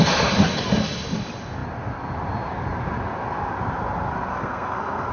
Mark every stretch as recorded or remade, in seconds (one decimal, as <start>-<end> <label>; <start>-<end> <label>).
0.0-4.3 recorded; 4.3-5.1 remade